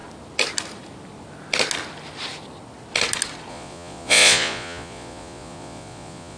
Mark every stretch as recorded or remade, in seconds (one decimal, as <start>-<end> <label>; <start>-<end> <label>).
0.0-3.5 recorded; 3.5-6.4 remade